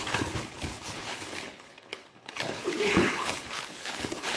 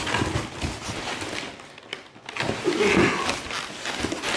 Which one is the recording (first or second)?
second